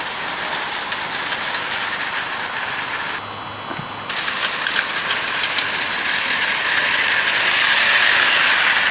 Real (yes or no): yes